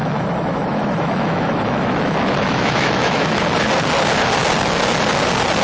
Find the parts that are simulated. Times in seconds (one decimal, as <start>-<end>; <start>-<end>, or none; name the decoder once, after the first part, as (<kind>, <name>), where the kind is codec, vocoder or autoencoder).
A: 0.0-3.4 (autoencoder, DAC-VAE)